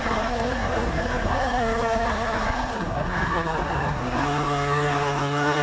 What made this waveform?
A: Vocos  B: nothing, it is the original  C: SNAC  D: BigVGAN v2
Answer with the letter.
C